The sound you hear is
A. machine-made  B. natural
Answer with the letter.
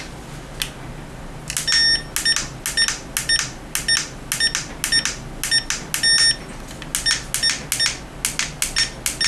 B